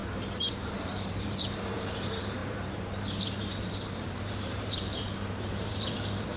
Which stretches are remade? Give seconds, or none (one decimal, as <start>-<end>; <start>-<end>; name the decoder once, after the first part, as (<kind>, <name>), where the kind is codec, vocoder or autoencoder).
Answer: 0.0-6.4 (vocoder, BigVGAN v2)